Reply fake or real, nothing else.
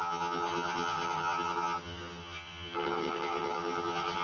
fake